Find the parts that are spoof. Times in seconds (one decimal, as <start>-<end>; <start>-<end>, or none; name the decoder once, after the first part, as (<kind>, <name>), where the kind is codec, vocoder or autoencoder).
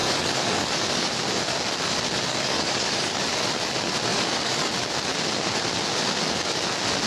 0.0-1.1 (codec, DAC); 2.3-3.2; 4.1-4.7